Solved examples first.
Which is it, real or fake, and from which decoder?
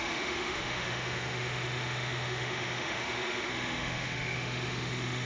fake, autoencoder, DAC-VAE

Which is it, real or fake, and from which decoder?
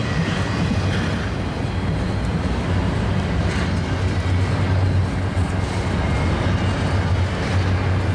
real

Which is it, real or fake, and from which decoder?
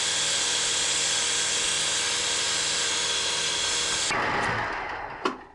real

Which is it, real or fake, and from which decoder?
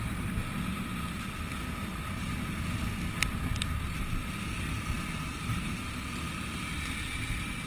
real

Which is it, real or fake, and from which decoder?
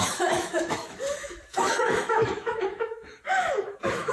fake, autoencoder, DAC-VAE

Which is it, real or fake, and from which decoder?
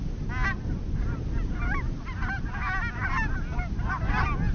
real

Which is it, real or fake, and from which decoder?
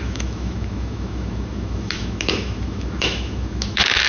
fake, autoencoder, DAC-VAE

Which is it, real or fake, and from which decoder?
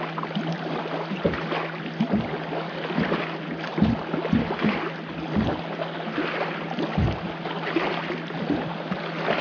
real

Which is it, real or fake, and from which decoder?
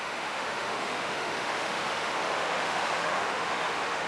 fake, autoencoder, DAC-VAE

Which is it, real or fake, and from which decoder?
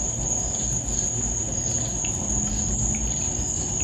real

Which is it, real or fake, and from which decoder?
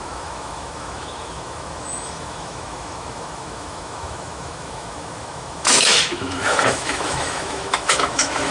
fake, autoencoder, DAC-VAE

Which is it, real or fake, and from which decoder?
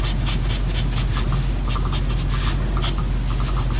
real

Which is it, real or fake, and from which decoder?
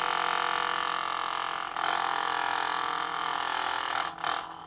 real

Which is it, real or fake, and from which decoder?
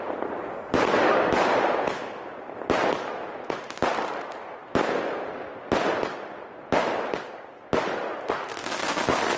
real